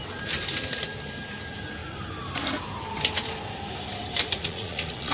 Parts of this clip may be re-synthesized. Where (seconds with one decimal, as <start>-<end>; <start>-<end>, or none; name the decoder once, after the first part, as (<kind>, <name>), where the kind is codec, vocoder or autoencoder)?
4.4-5.1 (vocoder, Vocos)